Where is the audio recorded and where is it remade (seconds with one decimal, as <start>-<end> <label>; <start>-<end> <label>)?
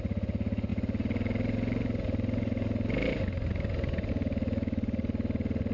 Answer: 0.0-5.7 recorded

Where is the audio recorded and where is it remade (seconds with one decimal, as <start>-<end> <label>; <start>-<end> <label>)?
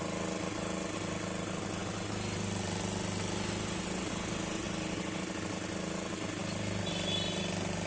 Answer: 0.0-7.9 recorded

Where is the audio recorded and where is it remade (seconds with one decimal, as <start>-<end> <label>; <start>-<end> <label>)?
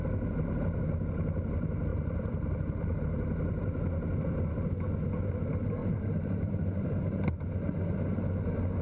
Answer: 0.0-1.9 recorded; 1.9-3.0 remade; 3.0-5.8 recorded; 5.8-7.0 remade; 7.0-8.8 recorded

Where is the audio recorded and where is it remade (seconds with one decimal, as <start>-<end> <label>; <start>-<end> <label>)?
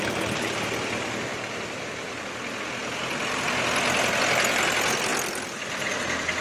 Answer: 0.0-1.3 recorded; 1.3-2.2 remade; 2.2-5.1 recorded; 5.1-6.0 remade; 6.0-6.4 recorded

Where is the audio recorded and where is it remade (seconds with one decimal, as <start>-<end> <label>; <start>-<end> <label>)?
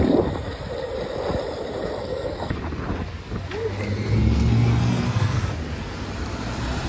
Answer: 0.0-2.0 recorded; 2.0-2.6 remade; 2.6-4.2 recorded; 4.2-5.4 remade; 5.4-6.9 recorded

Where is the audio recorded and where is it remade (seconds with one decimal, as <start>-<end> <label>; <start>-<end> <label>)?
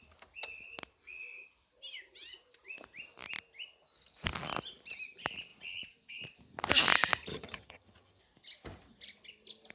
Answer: 0.0-7.3 recorded; 7.3-8.2 remade; 8.2-9.7 recorded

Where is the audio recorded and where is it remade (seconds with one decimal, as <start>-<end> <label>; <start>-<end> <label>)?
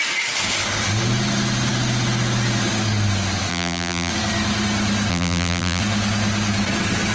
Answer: 0.0-3.5 recorded; 3.5-4.1 remade; 4.1-5.1 recorded; 5.1-5.8 remade; 5.8-7.1 recorded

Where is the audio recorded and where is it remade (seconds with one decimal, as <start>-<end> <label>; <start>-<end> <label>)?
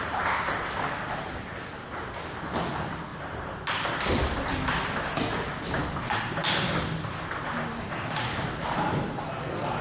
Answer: 0.0-3.1 recorded; 3.1-4.4 remade; 4.4-9.8 recorded